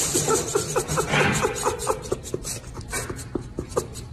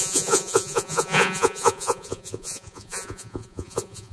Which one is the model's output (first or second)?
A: second